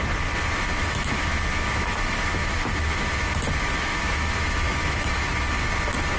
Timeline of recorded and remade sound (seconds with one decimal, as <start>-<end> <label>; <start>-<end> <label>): 0.0-0.7 recorded; 0.7-3.3 remade; 3.3-3.9 recorded; 3.9-5.5 remade; 5.5-6.2 recorded